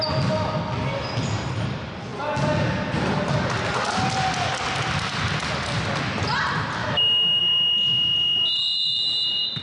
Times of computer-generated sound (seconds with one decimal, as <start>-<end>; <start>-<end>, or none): 6.8-7.4